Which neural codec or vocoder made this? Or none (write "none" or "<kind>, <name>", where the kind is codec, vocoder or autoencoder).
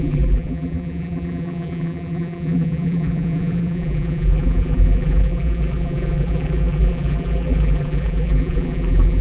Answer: vocoder, BigVGAN v2